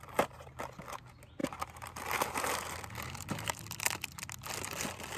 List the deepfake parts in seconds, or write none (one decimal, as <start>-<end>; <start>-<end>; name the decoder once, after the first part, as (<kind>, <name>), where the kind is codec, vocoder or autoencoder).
none

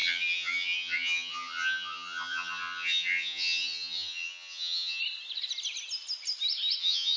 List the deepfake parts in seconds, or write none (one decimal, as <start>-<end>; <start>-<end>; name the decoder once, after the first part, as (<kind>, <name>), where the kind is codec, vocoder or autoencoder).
0.0-5.0 (vocoder, HiFi-GAN); 6.8-7.2

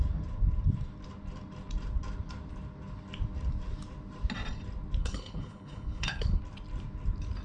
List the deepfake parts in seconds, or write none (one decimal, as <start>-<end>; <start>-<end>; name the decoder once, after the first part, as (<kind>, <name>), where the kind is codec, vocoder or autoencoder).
5.0-6.4 (codec, HILCodec)